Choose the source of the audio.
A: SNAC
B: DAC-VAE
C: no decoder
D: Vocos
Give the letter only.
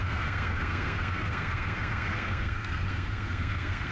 A